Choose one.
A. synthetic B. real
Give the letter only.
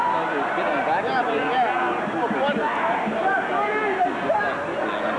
B